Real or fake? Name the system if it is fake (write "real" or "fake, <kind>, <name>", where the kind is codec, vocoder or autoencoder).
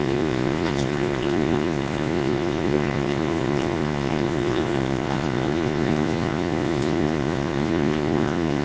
fake, vocoder, Vocos